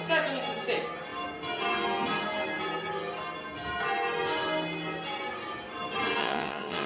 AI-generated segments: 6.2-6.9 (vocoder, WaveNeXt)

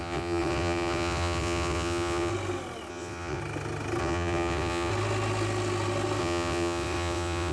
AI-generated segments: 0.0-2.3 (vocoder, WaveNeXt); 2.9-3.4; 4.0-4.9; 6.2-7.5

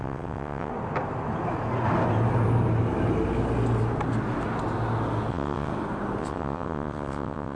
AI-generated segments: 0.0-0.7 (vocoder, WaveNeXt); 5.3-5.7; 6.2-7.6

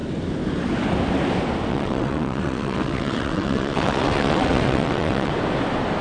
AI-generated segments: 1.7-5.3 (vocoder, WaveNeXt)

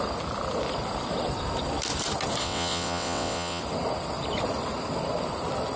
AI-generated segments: 2.4-3.6 (vocoder, WaveNeXt)

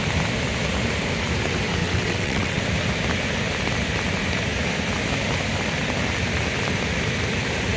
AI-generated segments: 1.8-2.6 (vocoder, WaveNeXt)